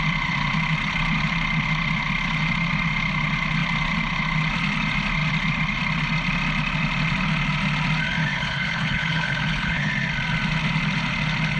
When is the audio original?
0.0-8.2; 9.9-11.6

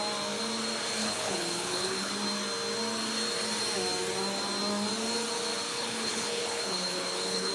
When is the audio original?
0.0-1.0; 2.1-5.7

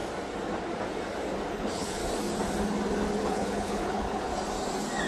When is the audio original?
0.0-1.5; 2.0-3.2; 4.3-5.1

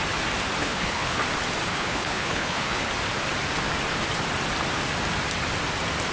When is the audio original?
0.0-0.6; 1.2-1.7; 2.9-6.1

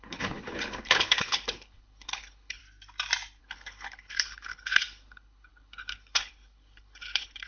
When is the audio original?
2.6-3.4

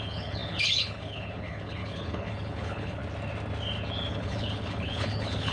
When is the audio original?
3.0-4.1